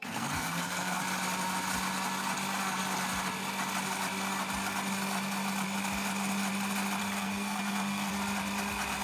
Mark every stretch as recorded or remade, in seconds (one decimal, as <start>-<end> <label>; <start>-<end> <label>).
0.0-1.0 remade; 1.0-7.0 recorded; 7.0-8.1 remade; 8.1-9.0 recorded

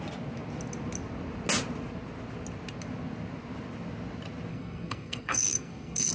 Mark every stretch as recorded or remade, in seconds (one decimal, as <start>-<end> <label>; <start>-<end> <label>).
0.0-4.5 recorded; 4.5-6.1 remade

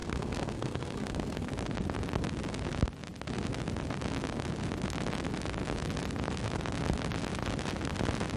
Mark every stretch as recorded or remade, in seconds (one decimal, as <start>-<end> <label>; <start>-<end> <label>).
0.0-1.5 remade; 1.5-8.4 recorded

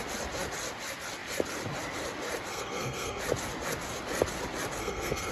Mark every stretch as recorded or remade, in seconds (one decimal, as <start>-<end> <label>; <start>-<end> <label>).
0.0-2.5 recorded; 2.5-3.2 remade; 3.2-4.8 recorded; 4.8-5.3 remade

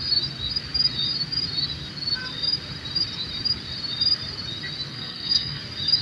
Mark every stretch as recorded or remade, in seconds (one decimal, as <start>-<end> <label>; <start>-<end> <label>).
0.0-4.9 recorded; 4.9-5.6 remade; 5.6-6.0 recorded